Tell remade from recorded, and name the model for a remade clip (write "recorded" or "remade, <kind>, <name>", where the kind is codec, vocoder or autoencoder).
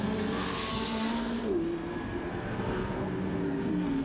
remade, codec, SNAC